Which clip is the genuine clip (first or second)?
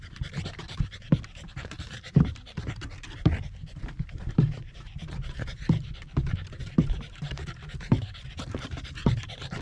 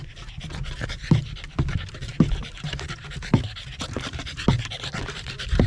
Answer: second